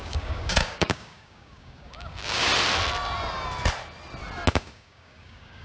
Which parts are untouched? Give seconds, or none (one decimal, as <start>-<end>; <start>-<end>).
2.5-4.5